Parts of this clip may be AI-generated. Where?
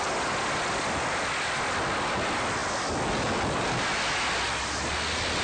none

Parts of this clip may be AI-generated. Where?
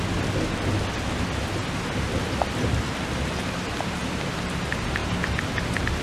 none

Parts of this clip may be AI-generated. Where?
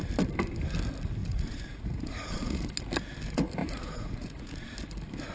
1.2-2.6 (vocoder, Vocos); 3.6-4.7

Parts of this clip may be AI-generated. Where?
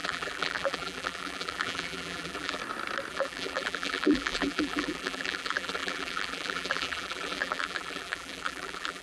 0.0-2.6 (vocoder, BigVGAN v2); 3.1-9.0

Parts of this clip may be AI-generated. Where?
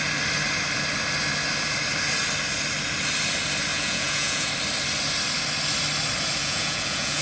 3.7-4.5 (vocoder, Vocos); 6.4-7.2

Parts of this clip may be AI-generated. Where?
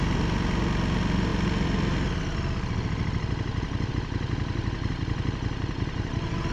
none